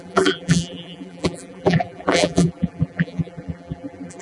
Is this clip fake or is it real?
fake